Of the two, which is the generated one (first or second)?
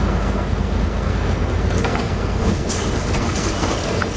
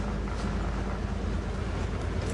first